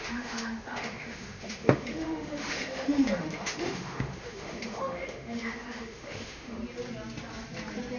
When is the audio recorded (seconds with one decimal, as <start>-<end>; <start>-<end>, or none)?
6.6-8.0